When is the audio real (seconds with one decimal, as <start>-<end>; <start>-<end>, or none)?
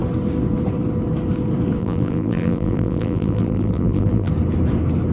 0.0-1.8; 4.3-5.1